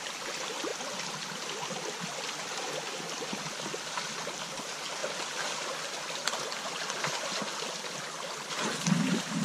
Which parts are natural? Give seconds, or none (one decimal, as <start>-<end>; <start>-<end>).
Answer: 0.0-9.4